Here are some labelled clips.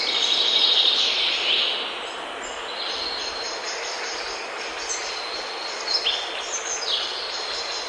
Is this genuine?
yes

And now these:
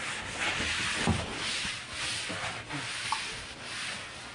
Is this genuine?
yes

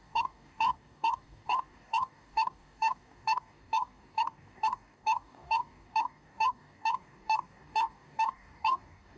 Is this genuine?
no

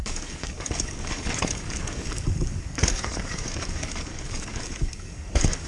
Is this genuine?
no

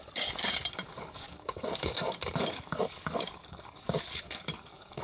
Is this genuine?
no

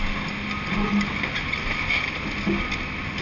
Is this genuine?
yes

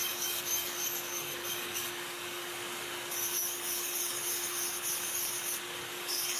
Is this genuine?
no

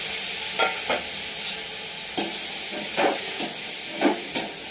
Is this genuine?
yes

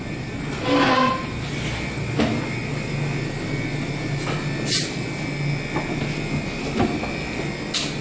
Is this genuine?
yes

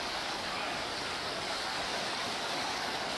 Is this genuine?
no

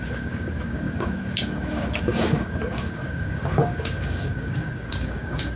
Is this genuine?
no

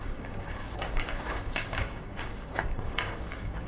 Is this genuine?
no